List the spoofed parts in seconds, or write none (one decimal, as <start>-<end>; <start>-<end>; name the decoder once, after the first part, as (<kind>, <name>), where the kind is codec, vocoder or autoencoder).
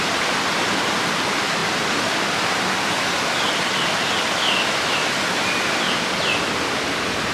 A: none